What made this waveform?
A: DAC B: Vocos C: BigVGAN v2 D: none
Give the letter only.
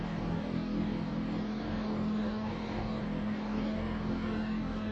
A